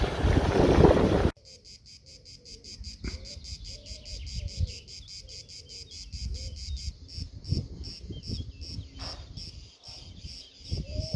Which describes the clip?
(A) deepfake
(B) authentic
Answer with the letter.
B